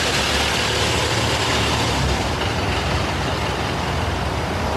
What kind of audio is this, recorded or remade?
recorded